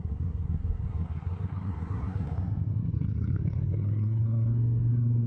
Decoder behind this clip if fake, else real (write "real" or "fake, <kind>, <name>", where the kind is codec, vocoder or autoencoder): fake, codec, SNAC